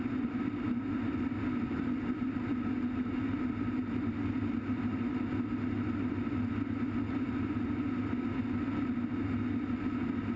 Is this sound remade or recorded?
recorded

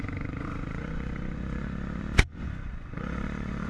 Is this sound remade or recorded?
remade